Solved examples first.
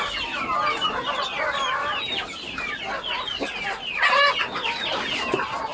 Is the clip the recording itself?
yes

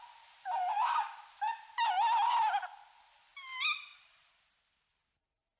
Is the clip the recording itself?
yes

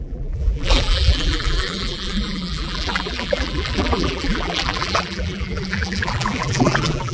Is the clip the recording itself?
no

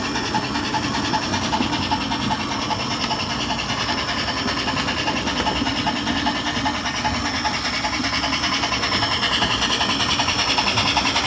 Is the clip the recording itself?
yes